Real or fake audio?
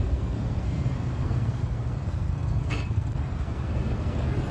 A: fake